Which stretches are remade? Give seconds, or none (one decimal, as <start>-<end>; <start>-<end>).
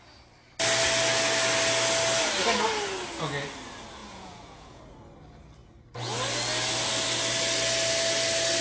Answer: 4.0-4.8